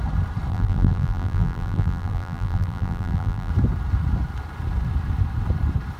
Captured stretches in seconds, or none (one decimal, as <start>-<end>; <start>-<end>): 0.0-0.5; 3.5-6.0

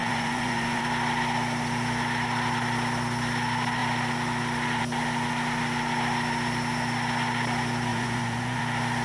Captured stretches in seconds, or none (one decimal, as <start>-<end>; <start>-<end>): 0.8-7.9; 8.6-9.0

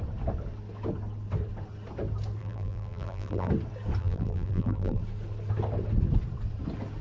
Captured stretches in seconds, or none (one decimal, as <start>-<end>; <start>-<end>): 0.0-2.4; 3.5-4.0; 5.0-7.0

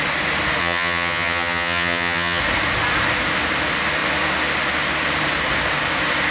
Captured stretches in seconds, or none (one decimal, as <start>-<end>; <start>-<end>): 0.0-0.6; 2.4-6.3

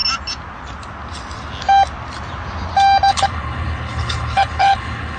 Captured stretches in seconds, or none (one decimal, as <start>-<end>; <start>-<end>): 0.0-3.1

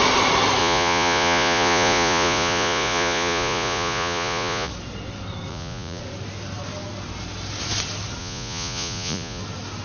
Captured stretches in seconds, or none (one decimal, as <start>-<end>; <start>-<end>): 0.0-0.6; 4.7-5.5; 6.0-8.2; 9.4-9.8